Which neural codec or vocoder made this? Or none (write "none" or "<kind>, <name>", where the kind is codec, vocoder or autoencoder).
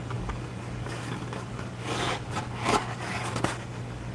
codec, DAC